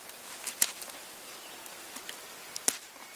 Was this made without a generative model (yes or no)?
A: yes